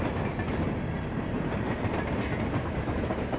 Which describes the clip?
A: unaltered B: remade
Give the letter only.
A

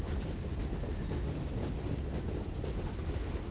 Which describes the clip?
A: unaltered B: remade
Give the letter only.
A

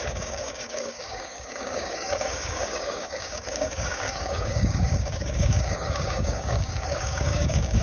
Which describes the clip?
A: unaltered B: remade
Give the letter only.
B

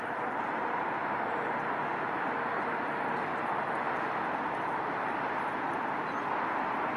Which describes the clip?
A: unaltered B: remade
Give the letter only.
A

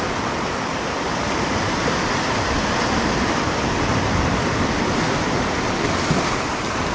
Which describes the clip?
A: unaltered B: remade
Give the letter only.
A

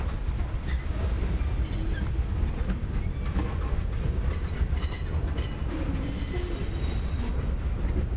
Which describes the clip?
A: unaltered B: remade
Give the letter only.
A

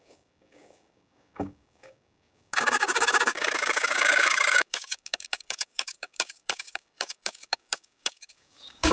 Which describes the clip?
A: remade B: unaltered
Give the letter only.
A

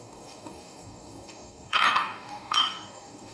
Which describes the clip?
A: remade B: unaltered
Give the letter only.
A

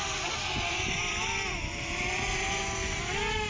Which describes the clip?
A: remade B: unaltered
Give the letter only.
B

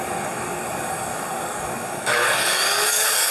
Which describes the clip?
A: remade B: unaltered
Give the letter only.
A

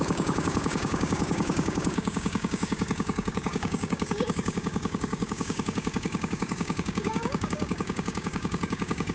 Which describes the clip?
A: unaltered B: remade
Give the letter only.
B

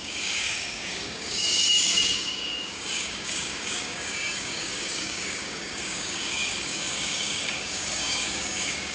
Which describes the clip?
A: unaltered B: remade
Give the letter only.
B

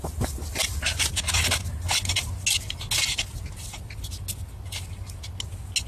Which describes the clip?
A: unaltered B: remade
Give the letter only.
A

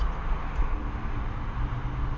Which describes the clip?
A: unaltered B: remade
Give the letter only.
A